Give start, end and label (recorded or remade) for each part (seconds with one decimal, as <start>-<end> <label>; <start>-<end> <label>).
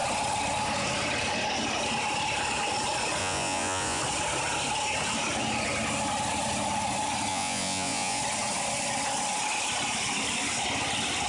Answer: 0.0-3.2 recorded; 3.2-4.0 remade; 4.0-7.3 recorded; 7.3-8.2 remade; 8.2-11.3 recorded